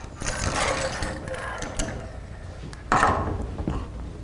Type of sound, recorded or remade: recorded